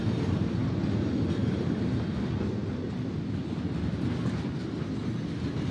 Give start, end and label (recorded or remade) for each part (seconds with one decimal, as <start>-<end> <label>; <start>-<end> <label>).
0.0-5.7 recorded